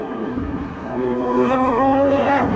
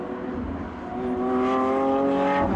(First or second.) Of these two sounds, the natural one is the second